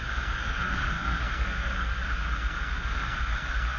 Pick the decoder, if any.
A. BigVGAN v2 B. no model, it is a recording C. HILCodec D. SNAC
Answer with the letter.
D